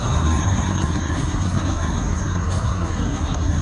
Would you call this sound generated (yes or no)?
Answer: yes